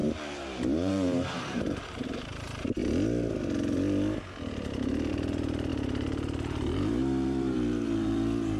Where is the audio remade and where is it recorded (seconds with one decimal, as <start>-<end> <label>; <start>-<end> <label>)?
0.0-2.8 remade; 2.8-5.1 recorded; 5.1-8.6 remade